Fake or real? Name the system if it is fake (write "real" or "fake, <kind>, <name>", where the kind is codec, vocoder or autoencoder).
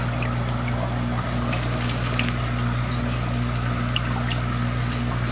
real